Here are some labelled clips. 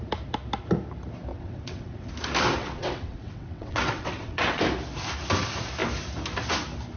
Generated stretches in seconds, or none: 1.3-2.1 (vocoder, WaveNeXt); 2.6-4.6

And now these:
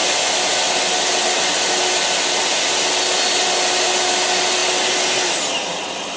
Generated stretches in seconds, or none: none

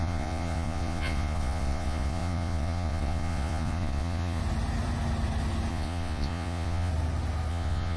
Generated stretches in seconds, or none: 0.0-4.4 (vocoder, Vocos); 5.7-6.9; 7.5-8.0

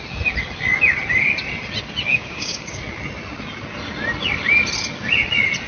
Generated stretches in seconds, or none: 2.1-2.8 (codec, DAC)

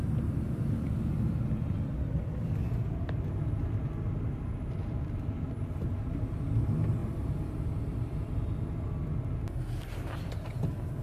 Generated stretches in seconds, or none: none

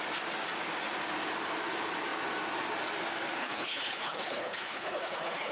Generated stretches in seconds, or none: 3.4-5.5 (codec, HILCodec)